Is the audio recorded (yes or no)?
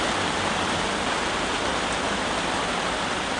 yes